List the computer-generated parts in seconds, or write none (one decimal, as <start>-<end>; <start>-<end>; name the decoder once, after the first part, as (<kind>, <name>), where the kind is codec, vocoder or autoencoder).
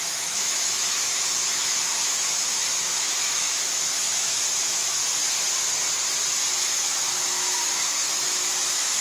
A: 0.0-5.0 (autoencoder, DAC-VAE); 6.5-9.0